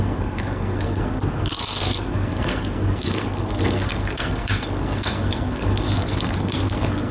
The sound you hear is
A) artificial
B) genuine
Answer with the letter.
A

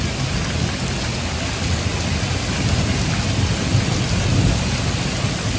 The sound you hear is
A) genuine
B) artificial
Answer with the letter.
A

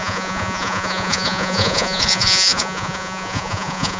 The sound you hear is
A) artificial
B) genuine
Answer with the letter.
A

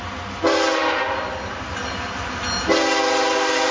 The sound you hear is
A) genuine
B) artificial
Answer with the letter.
A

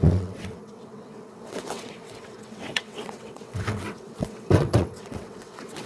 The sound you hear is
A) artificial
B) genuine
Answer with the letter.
A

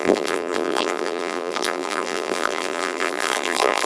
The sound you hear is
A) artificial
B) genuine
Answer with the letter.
A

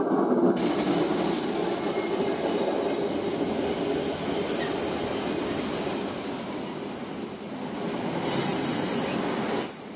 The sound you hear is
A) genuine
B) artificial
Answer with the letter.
A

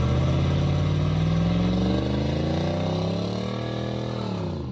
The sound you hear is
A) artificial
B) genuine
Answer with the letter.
B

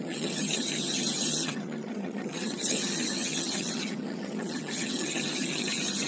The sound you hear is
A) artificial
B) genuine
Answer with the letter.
A